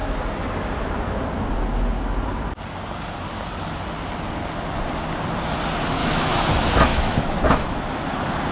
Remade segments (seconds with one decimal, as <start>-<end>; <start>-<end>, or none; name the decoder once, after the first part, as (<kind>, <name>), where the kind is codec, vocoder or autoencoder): 6.0-6.5 (autoencoder, DAC-VAE); 6.9-7.8